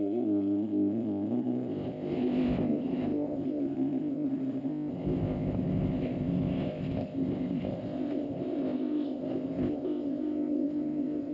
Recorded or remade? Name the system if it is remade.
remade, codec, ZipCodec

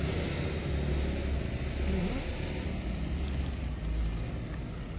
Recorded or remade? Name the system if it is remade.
recorded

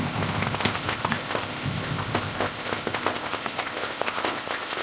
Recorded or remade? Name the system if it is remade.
remade, codec, ZipCodec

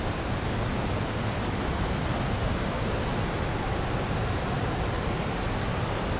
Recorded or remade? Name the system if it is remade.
recorded